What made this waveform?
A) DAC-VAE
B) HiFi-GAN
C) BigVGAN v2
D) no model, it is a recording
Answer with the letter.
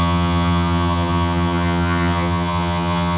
B